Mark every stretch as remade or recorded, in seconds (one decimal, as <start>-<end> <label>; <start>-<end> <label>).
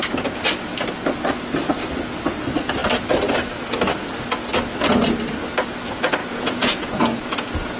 0.0-6.2 recorded; 6.2-7.8 remade